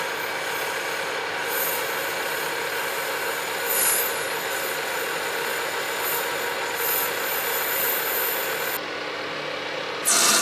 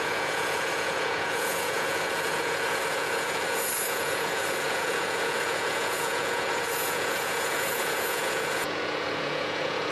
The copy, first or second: second